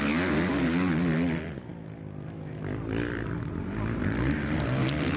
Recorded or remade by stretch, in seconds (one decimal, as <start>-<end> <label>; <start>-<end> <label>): 0.0-5.2 recorded